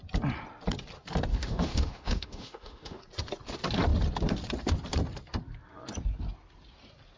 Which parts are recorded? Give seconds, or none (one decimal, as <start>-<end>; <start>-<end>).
0.0-1.3; 3.0-7.2